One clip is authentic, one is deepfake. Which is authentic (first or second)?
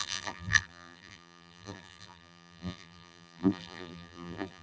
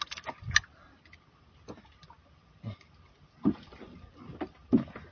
second